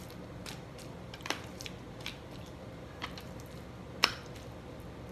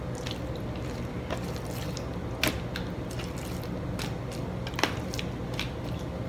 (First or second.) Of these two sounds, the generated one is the first